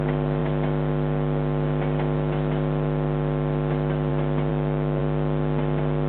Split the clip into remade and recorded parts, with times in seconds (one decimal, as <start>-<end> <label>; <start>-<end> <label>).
0.0-4.5 recorded; 4.5-5.0 remade; 5.0-6.1 recorded